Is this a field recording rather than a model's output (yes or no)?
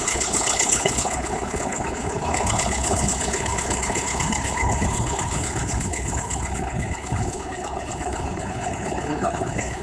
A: no